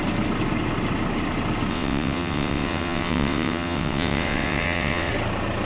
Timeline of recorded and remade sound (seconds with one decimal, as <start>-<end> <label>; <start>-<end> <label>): 0.0-1.7 recorded; 1.7-5.1 remade; 5.1-5.6 recorded